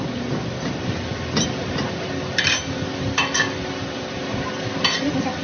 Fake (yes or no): no